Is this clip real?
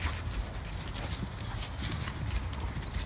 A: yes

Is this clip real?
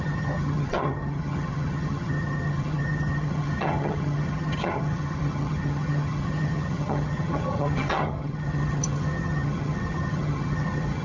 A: no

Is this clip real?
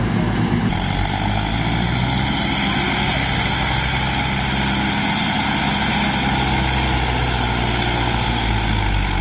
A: yes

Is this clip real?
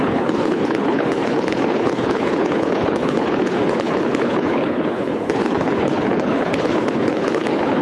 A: no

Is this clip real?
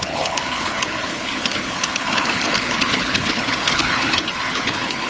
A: no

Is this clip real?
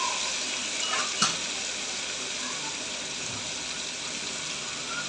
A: yes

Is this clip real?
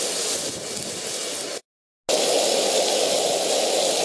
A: yes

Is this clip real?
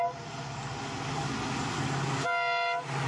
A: yes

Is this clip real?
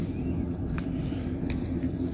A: no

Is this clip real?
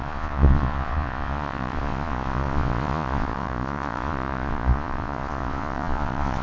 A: no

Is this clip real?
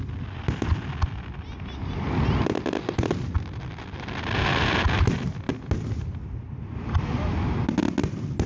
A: yes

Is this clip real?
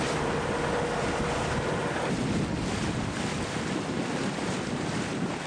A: yes